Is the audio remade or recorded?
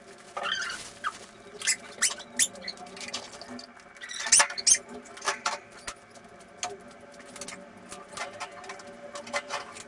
recorded